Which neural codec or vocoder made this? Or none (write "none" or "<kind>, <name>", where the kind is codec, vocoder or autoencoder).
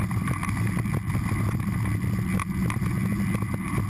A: none